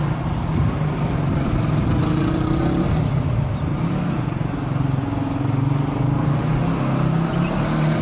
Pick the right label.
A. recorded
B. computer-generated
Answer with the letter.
A